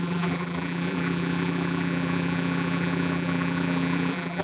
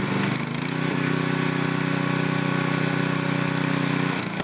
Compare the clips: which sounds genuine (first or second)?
second